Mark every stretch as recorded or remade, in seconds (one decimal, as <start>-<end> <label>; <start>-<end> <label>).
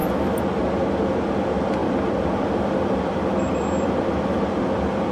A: 0.0-0.6 remade; 0.6-1.8 recorded; 1.8-4.4 remade; 4.4-5.1 recorded